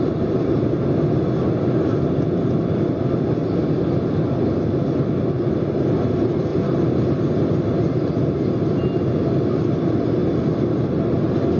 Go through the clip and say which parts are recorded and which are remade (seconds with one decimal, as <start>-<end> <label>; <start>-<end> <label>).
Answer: 0.0-10.2 recorded; 10.2-10.8 remade; 10.8-11.6 recorded